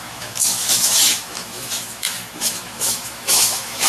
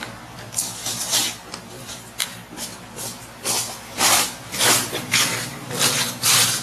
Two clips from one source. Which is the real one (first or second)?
second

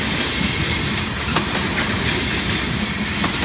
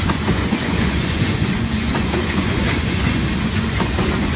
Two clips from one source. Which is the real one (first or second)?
first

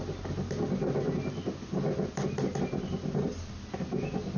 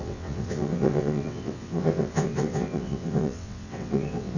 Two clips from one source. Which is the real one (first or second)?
first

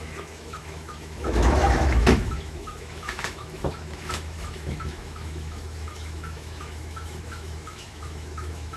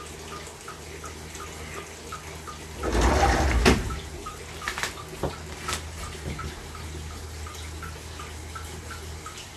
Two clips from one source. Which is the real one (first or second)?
second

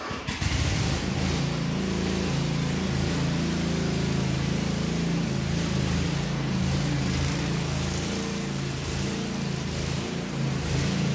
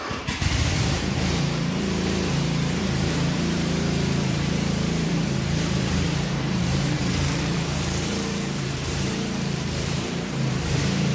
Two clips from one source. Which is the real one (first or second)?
first